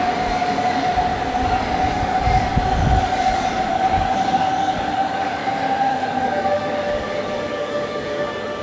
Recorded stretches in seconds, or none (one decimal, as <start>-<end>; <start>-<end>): 0.9-1.8; 2.5-3.0; 5.4-5.9